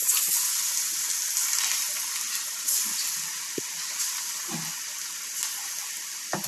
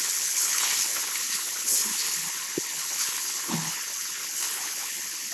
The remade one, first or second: second